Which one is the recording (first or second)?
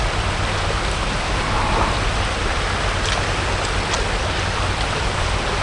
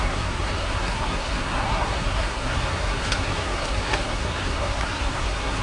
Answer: first